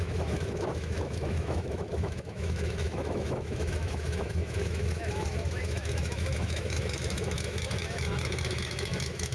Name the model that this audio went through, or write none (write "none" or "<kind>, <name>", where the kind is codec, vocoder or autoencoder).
autoencoder, DAC-VAE